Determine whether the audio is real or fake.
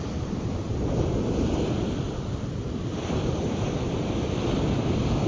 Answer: real